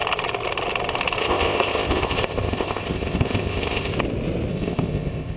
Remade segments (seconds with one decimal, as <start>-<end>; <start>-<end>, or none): 1.2-3.9; 4.5-5.4